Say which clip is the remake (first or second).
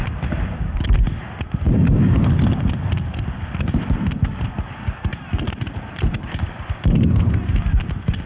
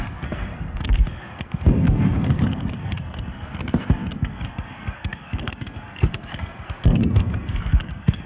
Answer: second